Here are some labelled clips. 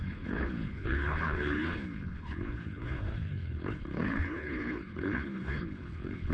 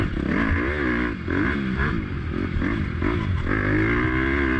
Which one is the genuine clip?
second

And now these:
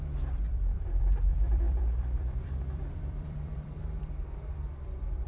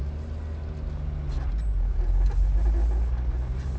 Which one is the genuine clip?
second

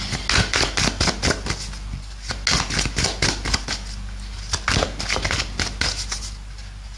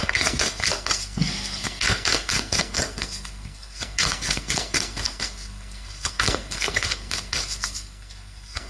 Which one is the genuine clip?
first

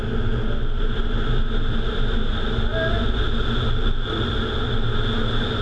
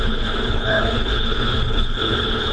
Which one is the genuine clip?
first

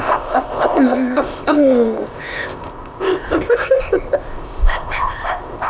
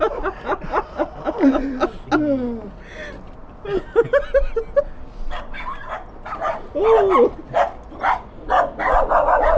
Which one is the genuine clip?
second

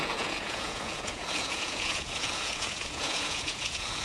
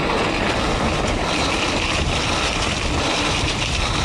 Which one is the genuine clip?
second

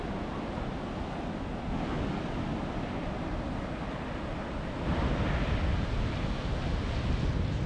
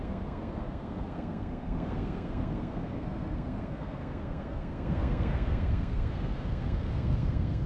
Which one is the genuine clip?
first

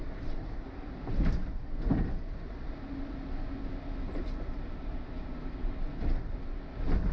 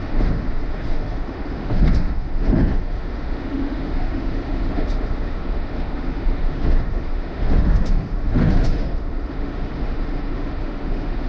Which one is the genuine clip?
first